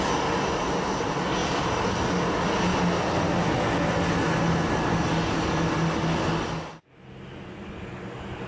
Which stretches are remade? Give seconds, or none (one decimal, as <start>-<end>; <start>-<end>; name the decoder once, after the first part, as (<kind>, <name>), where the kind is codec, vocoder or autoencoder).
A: none